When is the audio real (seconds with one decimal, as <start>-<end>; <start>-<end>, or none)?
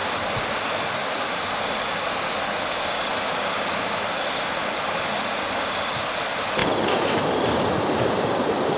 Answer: 0.0-8.8